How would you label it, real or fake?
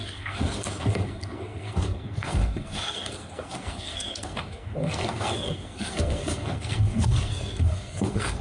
fake